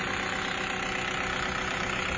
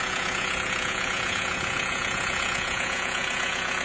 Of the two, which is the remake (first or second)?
second